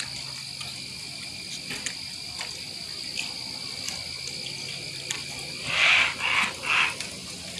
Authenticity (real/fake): real